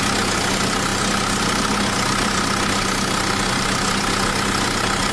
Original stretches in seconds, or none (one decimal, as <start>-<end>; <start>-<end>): 0.0-5.1